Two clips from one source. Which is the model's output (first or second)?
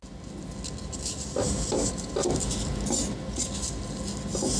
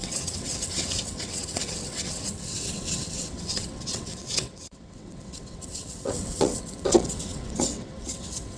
second